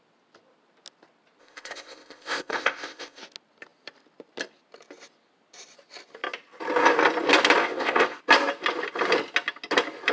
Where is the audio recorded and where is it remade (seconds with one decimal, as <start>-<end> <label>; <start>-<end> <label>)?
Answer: 0.0-1.4 recorded; 1.4-3.2 remade; 3.2-7.6 recorded; 7.6-8.2 remade; 8.2-10.1 recorded